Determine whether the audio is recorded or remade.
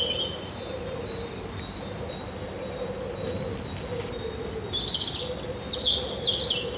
recorded